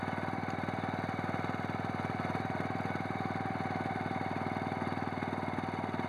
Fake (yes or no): no